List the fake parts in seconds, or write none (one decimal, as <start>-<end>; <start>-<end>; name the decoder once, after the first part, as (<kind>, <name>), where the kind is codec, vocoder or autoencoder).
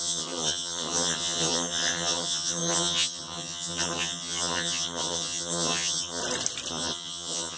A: 0.0-6.2 (vocoder, HiFi-GAN); 6.7-7.6